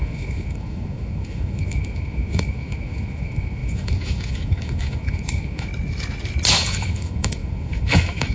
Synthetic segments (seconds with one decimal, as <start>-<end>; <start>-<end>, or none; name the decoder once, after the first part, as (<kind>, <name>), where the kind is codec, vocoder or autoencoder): 0.0-5.7 (autoencoder, DAC-VAE); 6.5-8.3